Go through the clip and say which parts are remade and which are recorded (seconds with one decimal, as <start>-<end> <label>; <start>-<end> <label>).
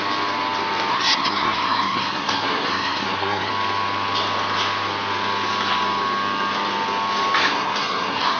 0.0-0.9 recorded; 0.9-3.5 remade; 3.5-7.4 recorded; 7.4-8.4 remade